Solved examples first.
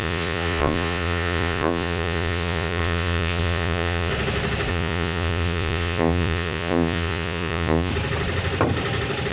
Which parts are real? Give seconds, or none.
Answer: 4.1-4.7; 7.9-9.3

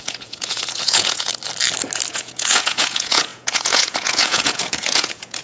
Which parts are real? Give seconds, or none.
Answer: 1.3-2.1

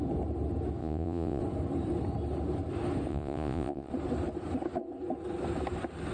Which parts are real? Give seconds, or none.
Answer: 0.0-0.8; 1.4-3.1; 3.9-6.1

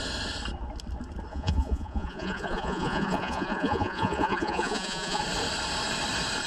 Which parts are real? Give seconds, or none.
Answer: 0.0-1.3; 5.2-6.5